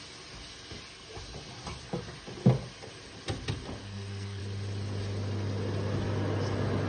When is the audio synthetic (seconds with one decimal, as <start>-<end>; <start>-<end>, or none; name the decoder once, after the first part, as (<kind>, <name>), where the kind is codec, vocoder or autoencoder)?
3.8-4.4 (codec, SNAC)